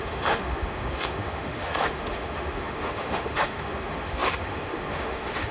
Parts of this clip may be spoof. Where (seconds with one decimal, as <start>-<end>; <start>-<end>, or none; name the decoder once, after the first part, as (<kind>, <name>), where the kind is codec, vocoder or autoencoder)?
0.0-5.5 (autoencoder, DAC-VAE)